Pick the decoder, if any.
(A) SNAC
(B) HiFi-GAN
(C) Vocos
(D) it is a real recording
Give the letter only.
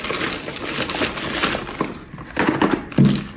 D